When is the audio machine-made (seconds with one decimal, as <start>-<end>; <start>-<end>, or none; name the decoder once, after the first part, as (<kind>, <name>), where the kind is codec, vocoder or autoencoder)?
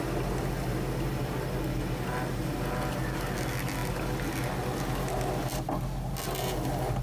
none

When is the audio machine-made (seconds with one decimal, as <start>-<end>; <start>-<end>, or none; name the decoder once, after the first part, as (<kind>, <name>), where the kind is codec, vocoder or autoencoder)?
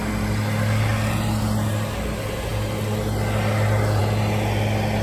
none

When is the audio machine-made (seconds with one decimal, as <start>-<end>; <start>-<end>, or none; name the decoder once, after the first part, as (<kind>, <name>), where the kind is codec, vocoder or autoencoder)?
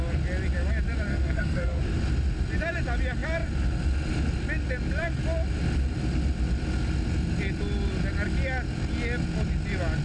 1.1-1.8 (codec, SNAC)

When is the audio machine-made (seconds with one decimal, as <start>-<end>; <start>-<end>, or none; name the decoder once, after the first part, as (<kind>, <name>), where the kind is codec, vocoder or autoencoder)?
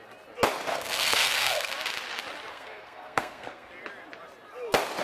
0.7-1.7 (codec, SNAC); 2.5-3.7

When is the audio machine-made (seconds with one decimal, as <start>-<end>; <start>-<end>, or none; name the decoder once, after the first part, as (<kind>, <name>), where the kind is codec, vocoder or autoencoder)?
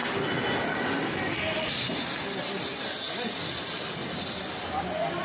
none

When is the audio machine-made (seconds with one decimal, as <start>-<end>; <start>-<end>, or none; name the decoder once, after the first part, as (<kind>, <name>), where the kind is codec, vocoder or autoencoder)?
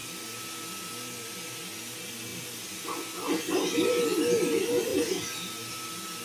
none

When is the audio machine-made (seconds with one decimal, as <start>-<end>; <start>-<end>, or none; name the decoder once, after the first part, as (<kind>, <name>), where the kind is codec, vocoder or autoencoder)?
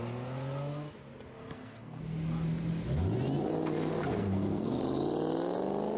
1.4-2.0 (codec, SNAC); 4.2-4.8